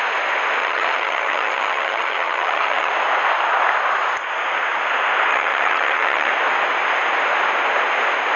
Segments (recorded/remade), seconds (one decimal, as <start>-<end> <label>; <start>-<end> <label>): 0.0-0.6 recorded; 0.6-2.9 remade; 2.9-5.3 recorded; 5.3-6.3 remade; 6.3-8.4 recorded